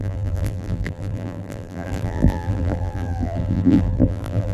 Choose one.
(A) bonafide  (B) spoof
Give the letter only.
B